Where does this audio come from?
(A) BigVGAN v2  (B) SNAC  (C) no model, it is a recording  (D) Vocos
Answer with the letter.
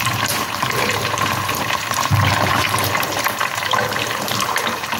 A